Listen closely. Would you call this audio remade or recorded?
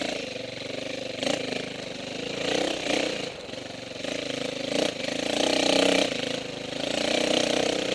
recorded